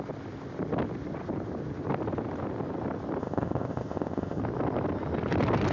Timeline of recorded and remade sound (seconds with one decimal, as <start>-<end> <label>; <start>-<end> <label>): 0.0-3.2 recorded; 3.2-4.4 remade; 4.4-5.7 recorded